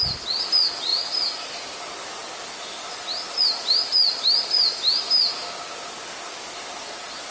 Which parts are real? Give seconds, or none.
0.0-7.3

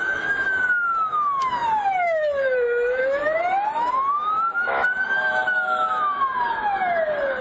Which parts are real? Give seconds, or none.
none